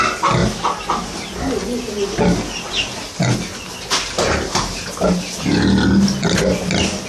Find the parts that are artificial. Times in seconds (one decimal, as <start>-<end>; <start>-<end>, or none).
0.4-0.9